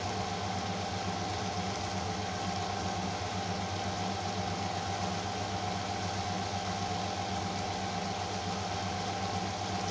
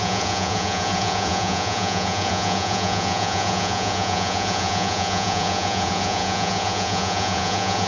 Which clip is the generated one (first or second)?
second